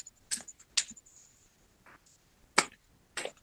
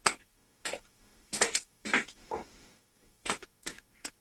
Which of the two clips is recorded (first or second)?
first